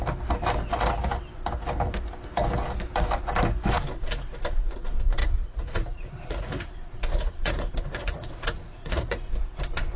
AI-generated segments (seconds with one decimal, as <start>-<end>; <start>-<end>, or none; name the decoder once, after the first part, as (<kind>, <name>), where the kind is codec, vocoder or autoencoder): 5.2-9.3 (vocoder, Vocos)